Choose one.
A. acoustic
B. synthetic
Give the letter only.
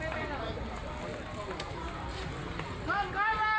A